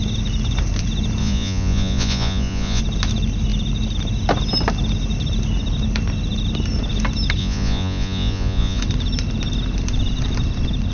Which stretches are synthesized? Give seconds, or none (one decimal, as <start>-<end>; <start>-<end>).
1.2-2.8; 7.4-8.8